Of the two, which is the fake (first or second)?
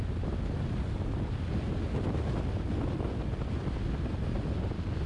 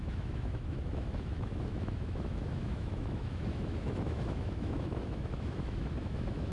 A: second